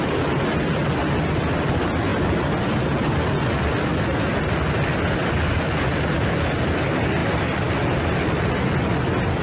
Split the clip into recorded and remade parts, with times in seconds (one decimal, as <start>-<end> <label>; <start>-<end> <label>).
0.0-9.4 recorded